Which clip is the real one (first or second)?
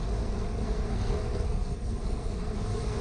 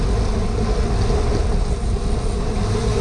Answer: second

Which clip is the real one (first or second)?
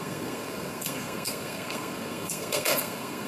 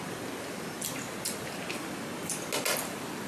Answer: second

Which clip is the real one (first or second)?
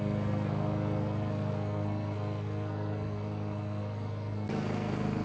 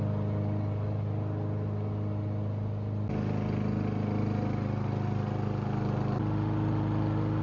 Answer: second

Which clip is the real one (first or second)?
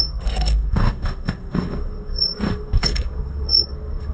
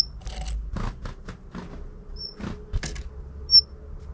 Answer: second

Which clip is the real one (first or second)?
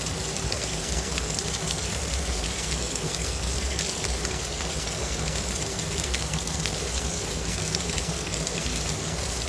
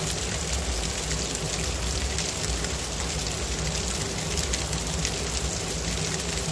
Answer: second